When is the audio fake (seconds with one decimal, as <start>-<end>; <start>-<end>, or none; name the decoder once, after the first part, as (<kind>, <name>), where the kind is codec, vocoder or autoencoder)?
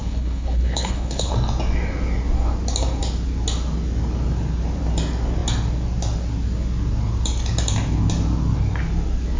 0.0-1.3 (codec, HILCodec)